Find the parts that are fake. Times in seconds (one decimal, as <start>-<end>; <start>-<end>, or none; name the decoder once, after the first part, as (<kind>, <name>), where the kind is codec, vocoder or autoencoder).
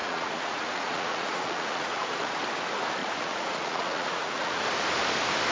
0.0-2.4 (vocoder, Vocos); 3.0-4.6